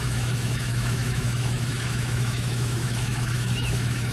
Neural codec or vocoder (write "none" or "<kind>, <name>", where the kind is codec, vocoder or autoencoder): autoencoder, DAC-VAE